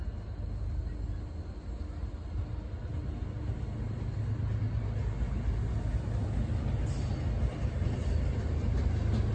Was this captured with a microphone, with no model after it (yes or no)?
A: yes